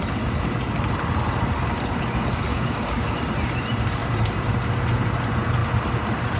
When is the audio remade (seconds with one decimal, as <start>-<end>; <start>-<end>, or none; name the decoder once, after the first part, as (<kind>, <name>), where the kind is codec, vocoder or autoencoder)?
2.5-3.2 (codec, DAC)